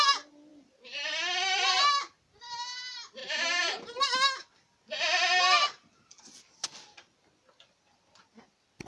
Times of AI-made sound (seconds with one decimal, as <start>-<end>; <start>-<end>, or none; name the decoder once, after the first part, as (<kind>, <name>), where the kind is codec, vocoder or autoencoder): none

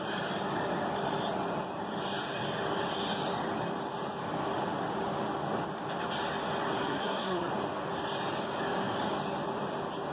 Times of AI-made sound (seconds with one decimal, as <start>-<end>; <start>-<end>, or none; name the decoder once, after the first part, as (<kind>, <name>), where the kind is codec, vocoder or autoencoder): 6.8-7.5 (codec, SNAC)